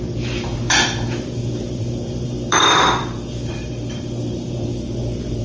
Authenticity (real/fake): fake